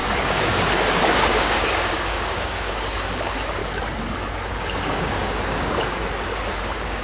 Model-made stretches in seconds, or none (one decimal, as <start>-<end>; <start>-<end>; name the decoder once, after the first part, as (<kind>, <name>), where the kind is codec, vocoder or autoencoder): 0.0-3.6 (codec, DAC); 4.5-6.0; 6.6-7.0